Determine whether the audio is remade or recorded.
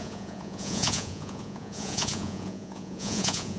remade